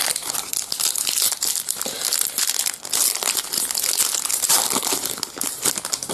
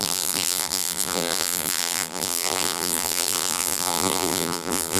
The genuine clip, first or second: first